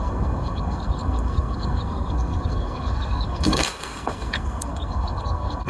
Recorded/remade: remade